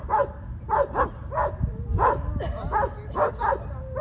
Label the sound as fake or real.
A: real